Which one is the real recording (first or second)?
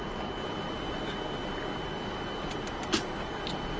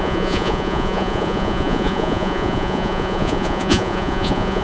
first